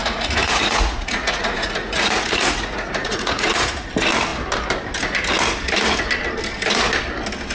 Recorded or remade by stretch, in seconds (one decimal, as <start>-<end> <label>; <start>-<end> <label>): 0.0-3.9 remade; 3.9-7.5 recorded